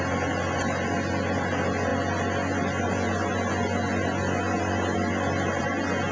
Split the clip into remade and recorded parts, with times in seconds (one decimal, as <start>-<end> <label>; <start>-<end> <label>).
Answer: 0.0-6.1 recorded